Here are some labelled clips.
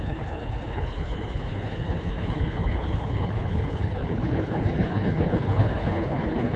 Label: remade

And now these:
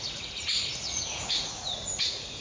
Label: remade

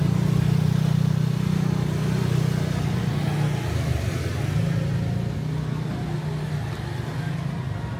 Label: recorded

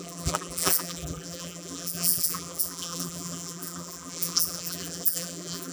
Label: remade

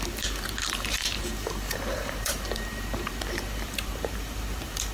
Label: remade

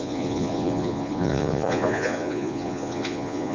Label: remade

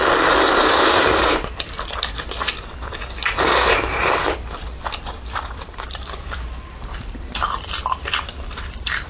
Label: remade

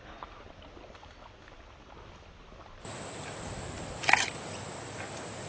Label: recorded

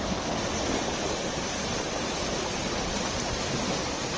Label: recorded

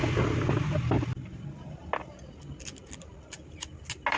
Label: recorded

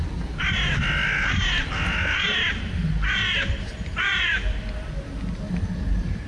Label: recorded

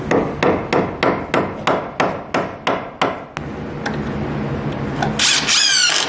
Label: recorded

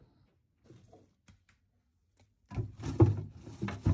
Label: recorded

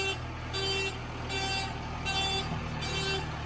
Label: recorded